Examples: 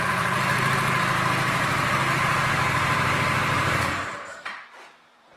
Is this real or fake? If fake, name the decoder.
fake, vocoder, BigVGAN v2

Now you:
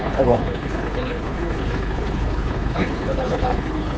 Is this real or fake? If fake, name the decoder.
fake, codec, HILCodec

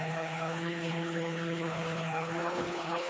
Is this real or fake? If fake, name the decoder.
fake, codec, HILCodec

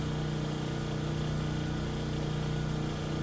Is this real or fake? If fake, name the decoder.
real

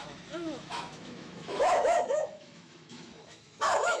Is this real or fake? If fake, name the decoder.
fake, autoencoder, DAC-VAE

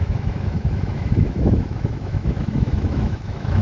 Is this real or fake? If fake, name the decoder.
fake, autoencoder, DAC-VAE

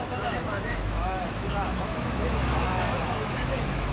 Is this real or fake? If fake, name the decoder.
fake, autoencoder, DAC-VAE